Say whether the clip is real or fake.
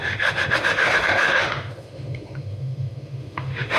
fake